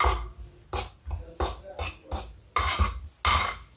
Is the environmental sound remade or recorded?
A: recorded